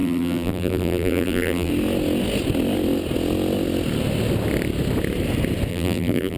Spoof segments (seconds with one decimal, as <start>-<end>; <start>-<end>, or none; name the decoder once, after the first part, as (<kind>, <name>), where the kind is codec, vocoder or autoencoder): 0.0-1.7 (vocoder, BigVGAN v2); 5.7-6.4